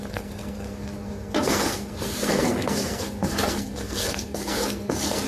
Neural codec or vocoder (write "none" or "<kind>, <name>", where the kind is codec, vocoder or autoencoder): codec, SNAC